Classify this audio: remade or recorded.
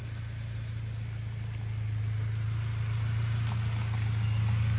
recorded